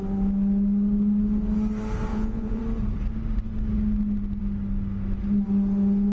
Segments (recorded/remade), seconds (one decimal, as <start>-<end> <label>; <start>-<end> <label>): 0.0-2.1 recorded; 2.1-2.6 remade; 2.6-6.1 recorded